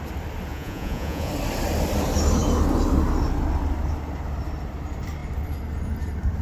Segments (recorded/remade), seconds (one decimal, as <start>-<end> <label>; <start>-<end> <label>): 0.0-0.5 recorded; 0.5-1.3 remade; 1.3-6.4 recorded